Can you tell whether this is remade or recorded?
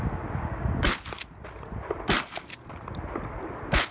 recorded